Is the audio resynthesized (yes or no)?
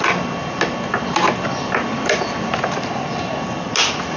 no